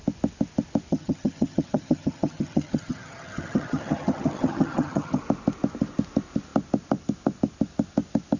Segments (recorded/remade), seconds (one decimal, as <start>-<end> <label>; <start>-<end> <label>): 0.0-0.9 recorded; 0.9-5.2 remade; 5.2-8.4 recorded